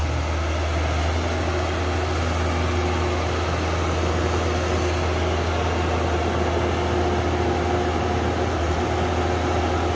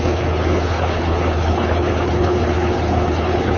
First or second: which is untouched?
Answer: first